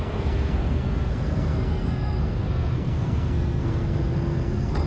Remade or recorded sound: remade